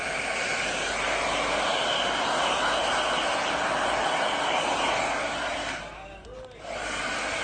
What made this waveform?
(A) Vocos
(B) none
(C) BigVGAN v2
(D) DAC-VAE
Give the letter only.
B